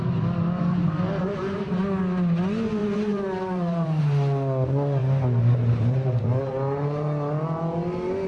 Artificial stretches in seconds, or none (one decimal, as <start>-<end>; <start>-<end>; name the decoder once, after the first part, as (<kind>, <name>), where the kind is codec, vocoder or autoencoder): 1.2-1.8 (vocoder, BigVGAN v2); 2.8-4.0